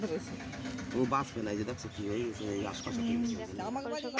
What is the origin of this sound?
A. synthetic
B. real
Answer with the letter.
B